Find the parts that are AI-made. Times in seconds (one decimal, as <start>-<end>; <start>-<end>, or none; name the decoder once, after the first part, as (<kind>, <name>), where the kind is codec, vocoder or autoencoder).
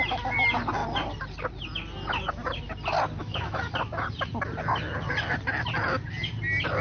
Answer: 3.2-3.7 (autoencoder, DAC-VAE)